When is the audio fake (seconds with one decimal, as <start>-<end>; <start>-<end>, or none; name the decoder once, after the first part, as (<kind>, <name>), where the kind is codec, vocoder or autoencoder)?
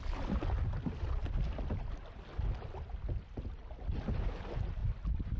none